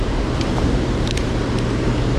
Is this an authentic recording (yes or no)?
no